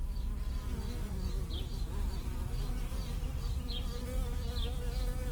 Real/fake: real